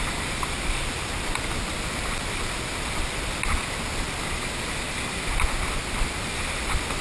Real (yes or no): yes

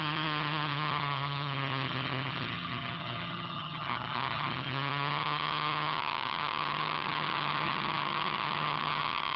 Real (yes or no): no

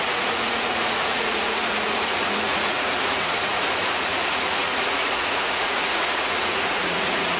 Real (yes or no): no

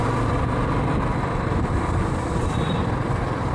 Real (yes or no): no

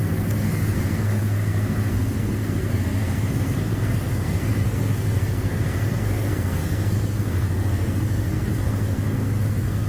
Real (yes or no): no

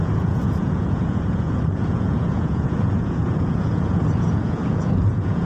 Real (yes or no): no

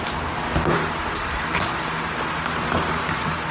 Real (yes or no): yes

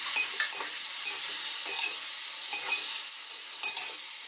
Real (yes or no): yes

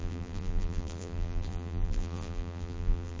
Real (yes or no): no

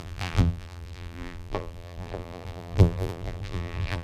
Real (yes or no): no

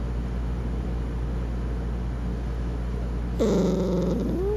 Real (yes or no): yes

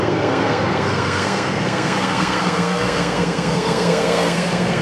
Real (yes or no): no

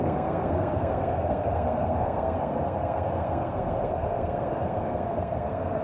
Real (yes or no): no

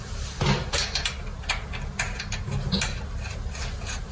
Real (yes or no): yes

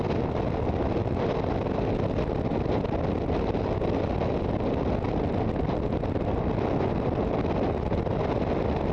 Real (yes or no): yes